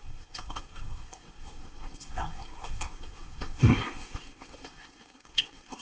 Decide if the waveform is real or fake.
fake